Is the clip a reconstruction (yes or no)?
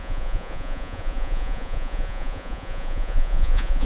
yes